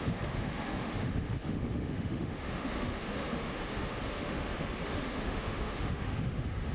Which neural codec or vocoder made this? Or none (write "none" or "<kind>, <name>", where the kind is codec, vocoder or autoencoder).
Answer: autoencoder, DAC-VAE